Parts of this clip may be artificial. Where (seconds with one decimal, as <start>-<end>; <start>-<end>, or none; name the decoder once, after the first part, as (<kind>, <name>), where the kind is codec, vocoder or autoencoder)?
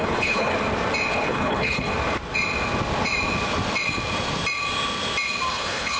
0.0-0.5 (codec, HILCodec); 1.1-1.9; 5.5-6.0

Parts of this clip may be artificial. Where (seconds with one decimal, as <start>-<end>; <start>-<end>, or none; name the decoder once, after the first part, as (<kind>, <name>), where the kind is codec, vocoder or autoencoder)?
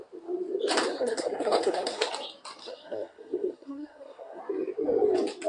0.9-2.1 (codec, SNAC); 2.6-4.4